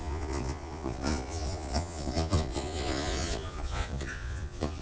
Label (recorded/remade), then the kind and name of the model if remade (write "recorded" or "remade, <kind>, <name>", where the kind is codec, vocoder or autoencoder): remade, vocoder, Vocos